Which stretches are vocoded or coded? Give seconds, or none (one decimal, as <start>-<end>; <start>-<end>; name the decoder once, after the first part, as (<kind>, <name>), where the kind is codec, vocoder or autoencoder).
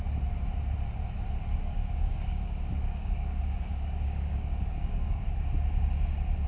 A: 1.6-5.2 (codec, DAC)